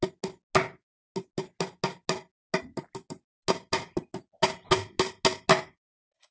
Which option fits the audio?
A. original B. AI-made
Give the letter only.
A